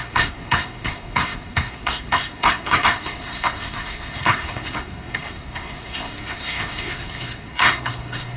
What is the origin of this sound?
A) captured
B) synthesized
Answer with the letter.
B